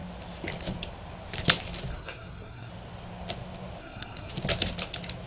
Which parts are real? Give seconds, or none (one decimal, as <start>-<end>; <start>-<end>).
0.0-1.9; 2.7-3.8; 4.3-5.3